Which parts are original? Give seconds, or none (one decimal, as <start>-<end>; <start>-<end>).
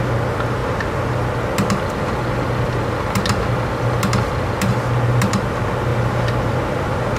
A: 0.0-7.2